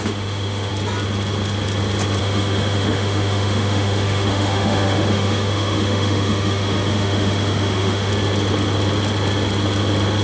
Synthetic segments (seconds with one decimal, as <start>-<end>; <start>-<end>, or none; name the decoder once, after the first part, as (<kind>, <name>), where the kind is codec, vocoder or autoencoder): 0.0-0.7 (autoencoder, DAC-VAE); 2.2-8.1

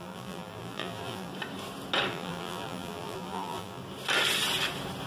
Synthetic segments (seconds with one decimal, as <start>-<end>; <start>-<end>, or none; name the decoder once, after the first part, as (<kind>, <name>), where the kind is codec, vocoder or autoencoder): 0.0-1.3 (vocoder, BigVGAN v2); 2.1-3.8

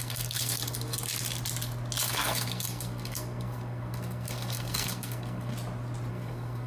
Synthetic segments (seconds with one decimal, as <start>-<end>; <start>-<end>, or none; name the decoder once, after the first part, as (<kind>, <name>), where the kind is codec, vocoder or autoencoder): 0.0-0.6 (codec, SNAC); 2.0-5.5; 6.1-6.7

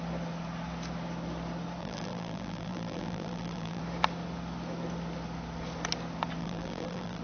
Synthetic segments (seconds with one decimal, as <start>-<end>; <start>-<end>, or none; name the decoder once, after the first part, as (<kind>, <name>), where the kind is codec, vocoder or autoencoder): 1.8-3.8 (vocoder, BigVGAN v2); 6.4-7.2

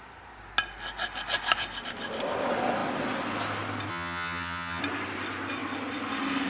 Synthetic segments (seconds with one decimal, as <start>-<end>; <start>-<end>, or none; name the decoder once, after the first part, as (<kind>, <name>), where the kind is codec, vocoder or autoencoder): 3.9-4.8 (vocoder, HiFi-GAN)

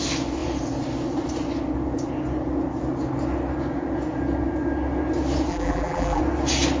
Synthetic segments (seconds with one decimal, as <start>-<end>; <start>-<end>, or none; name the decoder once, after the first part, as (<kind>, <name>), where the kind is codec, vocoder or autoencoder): 5.5-6.2 (vocoder, BigVGAN v2)